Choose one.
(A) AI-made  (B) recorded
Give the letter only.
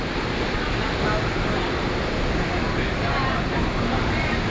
B